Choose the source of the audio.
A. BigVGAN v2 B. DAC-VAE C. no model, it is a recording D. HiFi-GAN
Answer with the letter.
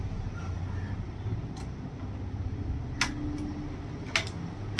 C